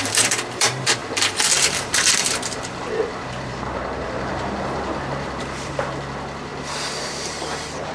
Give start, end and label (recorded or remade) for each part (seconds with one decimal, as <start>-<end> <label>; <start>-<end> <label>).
0.0-6.5 remade; 6.5-7.0 recorded; 7.0-7.9 remade